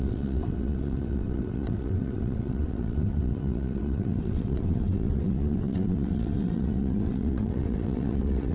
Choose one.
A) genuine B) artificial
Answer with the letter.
B